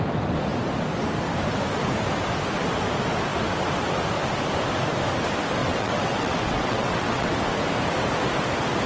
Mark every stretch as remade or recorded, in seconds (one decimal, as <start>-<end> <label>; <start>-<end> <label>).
0.0-5.6 recorded; 5.6-7.3 remade; 7.3-8.9 recorded